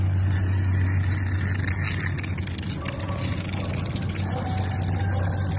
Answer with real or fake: real